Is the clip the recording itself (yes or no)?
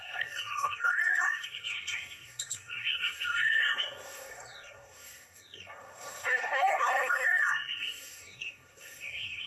no